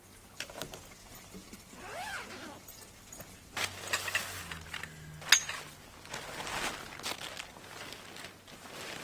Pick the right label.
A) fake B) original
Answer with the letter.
B